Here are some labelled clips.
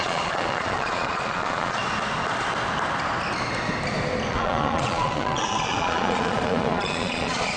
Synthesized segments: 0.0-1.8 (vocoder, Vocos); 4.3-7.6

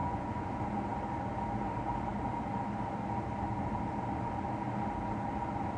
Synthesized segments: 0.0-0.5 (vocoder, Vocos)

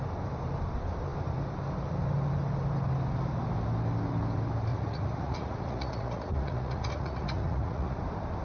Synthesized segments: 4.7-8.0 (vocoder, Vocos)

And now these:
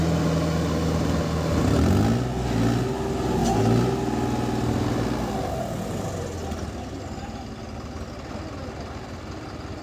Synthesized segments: none

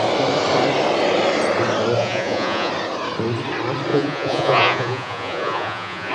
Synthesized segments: 2.0-2.7 (vocoder, Vocos); 3.9-6.1

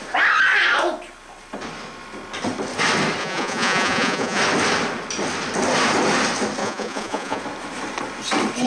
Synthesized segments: 3.2-4.4 (vocoder, Vocos); 6.6-7.4

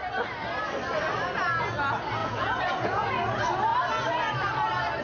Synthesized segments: 2.2-3.1 (vocoder, Vocos)

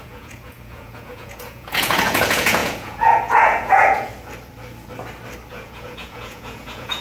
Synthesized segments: 0.0-4.1 (vocoder, Vocos); 5.5-7.0